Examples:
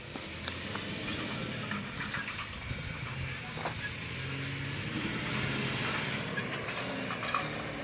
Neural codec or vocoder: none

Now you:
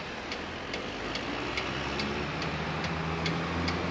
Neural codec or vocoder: none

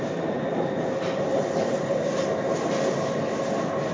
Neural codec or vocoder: none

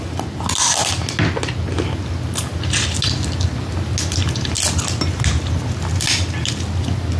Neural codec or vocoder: none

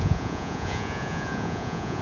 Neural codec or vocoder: vocoder, Vocos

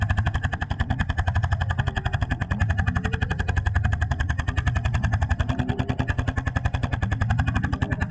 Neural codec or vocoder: none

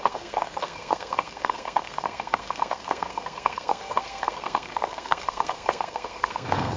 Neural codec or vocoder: codec, SNAC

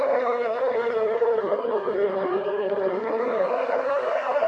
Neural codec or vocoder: codec, SNAC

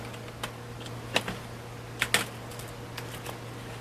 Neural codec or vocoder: none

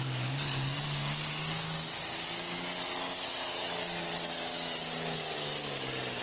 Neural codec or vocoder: none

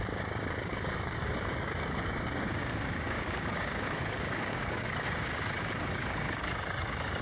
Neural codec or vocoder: codec, DAC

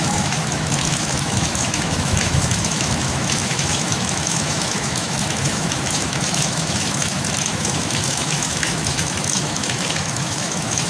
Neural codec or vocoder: autoencoder, DAC-VAE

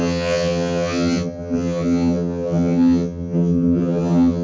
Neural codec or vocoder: vocoder, HiFi-GAN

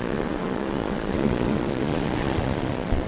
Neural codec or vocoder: vocoder, Vocos